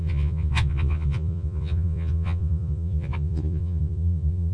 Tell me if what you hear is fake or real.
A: fake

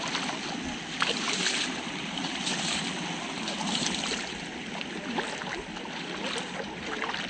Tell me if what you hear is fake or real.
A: real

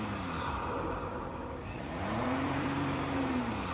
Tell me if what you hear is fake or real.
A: fake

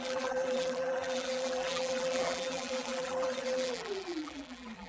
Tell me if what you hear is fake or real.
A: fake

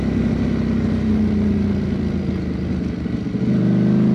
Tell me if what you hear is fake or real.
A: real